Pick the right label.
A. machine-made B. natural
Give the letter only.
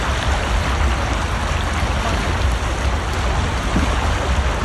B